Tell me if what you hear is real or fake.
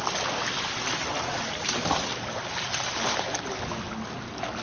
real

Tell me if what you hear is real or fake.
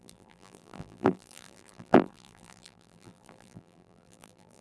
fake